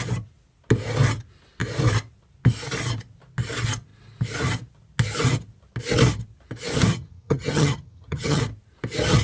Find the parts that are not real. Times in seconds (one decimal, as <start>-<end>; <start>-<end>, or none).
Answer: 6.9-8.4